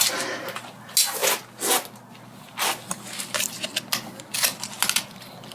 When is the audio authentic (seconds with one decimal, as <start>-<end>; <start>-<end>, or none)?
0.0-5.5